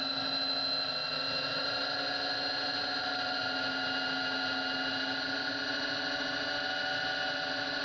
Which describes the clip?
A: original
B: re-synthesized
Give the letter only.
A